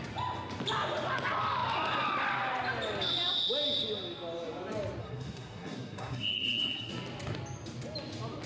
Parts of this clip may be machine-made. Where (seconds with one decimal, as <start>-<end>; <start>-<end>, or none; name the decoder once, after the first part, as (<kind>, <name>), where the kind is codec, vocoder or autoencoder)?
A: 5.0-6.9 (codec, SNAC)